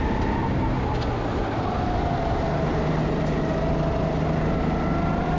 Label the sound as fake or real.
real